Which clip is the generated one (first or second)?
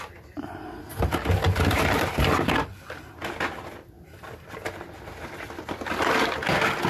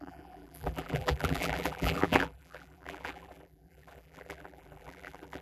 second